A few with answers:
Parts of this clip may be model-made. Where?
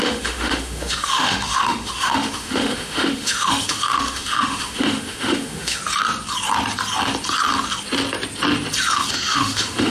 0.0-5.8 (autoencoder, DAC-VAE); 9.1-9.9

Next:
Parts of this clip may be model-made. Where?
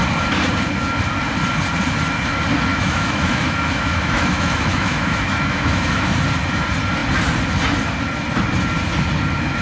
2.7-6.2 (autoencoder, DAC-VAE)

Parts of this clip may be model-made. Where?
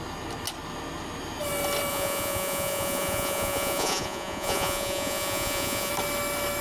1.9-5.9 (vocoder, Vocos)